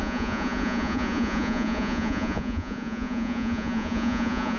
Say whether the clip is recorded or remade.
remade